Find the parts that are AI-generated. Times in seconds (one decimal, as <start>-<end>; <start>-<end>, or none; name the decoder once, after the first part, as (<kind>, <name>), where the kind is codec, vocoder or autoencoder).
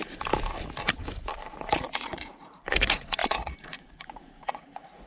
1.5-5.1 (vocoder, Vocos)